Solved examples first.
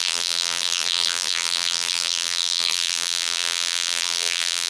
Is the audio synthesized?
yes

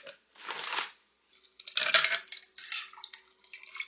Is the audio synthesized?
no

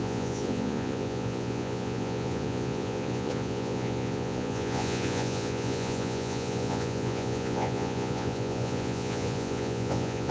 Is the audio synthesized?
yes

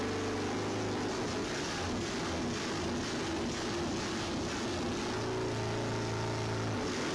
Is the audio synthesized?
no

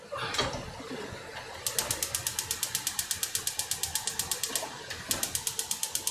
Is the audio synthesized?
no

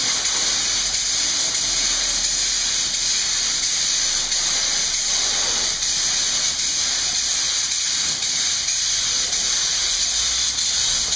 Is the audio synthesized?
no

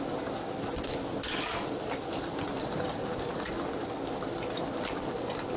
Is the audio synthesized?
no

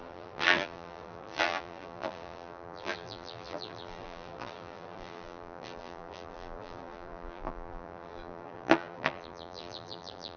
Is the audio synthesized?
yes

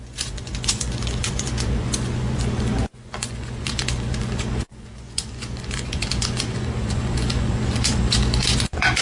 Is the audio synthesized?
yes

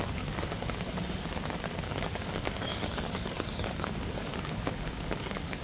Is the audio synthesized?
yes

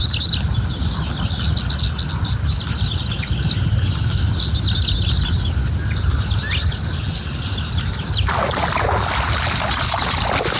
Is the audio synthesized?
no